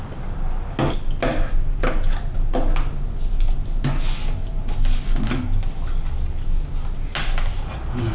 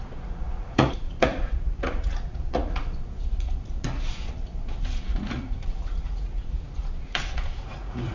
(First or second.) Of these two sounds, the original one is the first